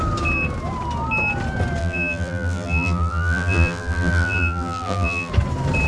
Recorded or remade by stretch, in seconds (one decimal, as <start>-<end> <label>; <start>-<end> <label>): 0.0-1.8 recorded; 1.8-5.3 remade; 5.3-5.9 recorded